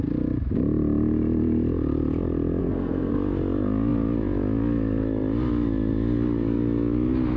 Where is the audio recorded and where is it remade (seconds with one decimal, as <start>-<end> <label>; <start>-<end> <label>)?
0.0-2.6 recorded; 2.6-3.1 remade; 3.1-7.4 recorded